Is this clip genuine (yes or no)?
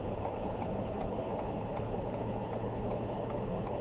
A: no